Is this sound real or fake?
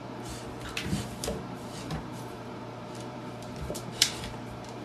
fake